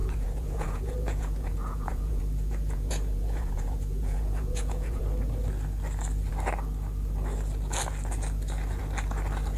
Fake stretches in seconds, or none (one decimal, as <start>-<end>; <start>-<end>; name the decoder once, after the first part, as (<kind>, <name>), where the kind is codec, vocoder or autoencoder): 0.0-5.0 (vocoder, Vocos)